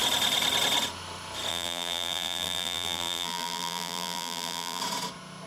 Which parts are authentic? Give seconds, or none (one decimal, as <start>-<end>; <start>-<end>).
0.0-1.5; 4.8-5.5